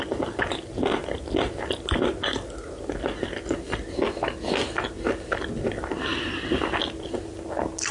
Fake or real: real